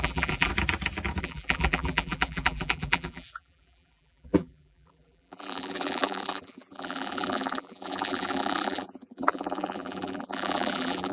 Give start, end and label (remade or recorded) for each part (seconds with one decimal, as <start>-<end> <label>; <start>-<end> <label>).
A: 0.0-0.5 remade; 0.5-1.2 recorded; 1.2-11.1 remade